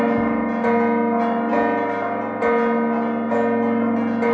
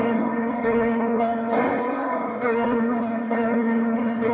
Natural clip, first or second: first